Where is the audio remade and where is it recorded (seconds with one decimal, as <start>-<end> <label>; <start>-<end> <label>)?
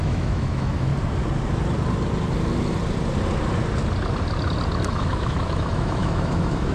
0.0-0.9 remade; 0.9-4.9 recorded; 4.9-6.7 remade